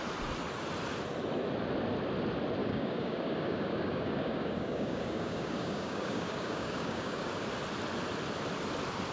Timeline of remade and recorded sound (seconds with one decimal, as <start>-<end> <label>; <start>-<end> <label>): 0.0-2.6 recorded; 2.6-7.3 remade; 7.3-9.1 recorded